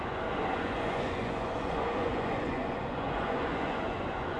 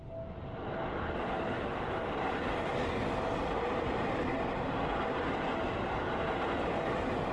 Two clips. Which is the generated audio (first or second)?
first